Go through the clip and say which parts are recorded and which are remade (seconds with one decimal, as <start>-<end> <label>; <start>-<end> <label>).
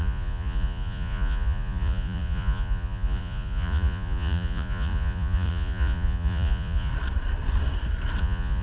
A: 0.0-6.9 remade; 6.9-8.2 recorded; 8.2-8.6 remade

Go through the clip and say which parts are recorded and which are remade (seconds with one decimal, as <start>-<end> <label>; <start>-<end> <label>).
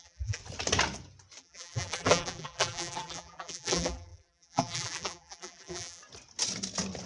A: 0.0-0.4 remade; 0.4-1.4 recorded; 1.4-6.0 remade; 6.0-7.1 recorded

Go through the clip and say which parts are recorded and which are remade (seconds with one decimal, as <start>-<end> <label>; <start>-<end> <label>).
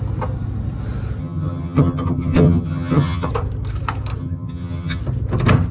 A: 0.0-1.2 recorded; 1.2-3.3 remade; 3.3-4.2 recorded; 4.2-5.0 remade; 5.0-5.7 recorded